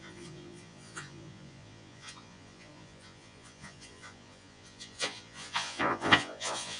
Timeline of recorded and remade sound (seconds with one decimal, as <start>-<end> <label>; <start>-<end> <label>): 0.0-6.8 remade